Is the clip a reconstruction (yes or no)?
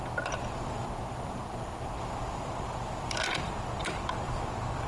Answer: yes